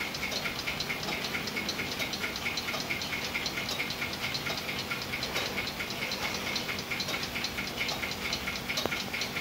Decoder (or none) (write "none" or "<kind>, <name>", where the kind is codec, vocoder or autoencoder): none